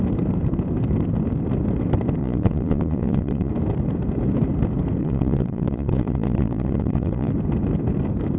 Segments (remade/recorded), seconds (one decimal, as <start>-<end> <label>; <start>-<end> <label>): 0.0-2.2 recorded; 2.2-3.5 remade; 3.5-5.0 recorded; 5.0-7.3 remade; 7.3-8.4 recorded